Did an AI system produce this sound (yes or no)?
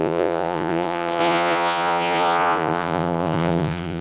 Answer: yes